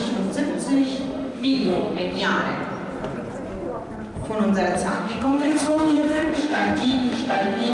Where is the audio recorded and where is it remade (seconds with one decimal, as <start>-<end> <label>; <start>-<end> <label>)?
0.0-0.8 recorded; 0.8-2.2 remade; 2.2-4.9 recorded; 4.9-7.7 remade